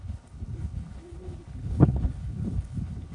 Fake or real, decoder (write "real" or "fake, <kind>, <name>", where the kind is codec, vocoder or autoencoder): fake, codec, HILCodec